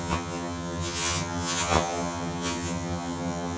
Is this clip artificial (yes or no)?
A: yes